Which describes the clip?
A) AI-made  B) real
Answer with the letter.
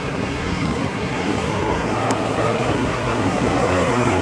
A